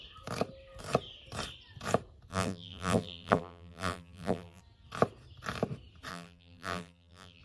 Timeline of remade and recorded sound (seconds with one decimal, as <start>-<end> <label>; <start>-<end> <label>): 0.0-2.3 recorded; 2.3-4.6 remade; 4.6-6.1 recorded; 6.1-7.4 remade